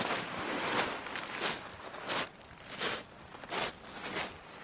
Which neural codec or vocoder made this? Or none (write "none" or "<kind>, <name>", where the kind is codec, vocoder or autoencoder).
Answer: none